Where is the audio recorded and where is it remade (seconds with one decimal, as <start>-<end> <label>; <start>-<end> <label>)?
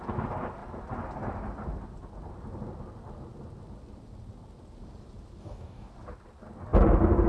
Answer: 0.0-5.4 recorded; 5.4-5.9 remade; 5.9-7.3 recorded